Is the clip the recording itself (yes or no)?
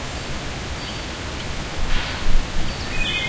yes